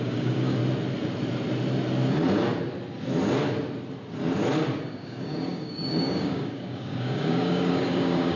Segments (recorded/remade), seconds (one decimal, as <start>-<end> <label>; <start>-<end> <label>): 0.0-0.6 remade; 0.6-4.8 recorded; 4.8-8.4 remade